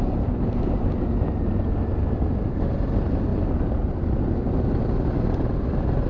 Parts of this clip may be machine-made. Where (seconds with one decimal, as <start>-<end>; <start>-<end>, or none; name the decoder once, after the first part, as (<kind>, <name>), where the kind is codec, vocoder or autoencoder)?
none